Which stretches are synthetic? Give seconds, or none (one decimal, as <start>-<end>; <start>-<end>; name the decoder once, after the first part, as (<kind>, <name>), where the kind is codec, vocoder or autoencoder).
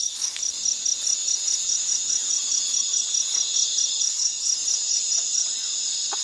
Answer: 0.0-0.4 (codec, HILCodec); 4.1-4.5